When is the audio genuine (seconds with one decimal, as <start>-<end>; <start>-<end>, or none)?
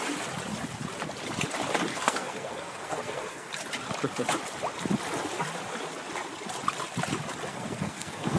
0.0-1.9; 3.5-7.5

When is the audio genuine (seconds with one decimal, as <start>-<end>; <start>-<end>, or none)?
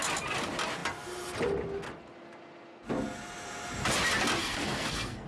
0.0-4.4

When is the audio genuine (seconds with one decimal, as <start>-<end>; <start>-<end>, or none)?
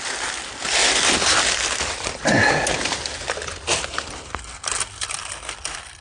0.0-6.0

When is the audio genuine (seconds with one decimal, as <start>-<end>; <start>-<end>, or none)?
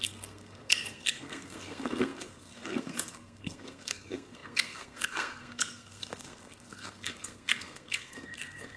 none